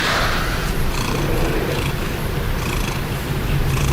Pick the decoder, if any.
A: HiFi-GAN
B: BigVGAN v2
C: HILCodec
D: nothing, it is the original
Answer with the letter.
B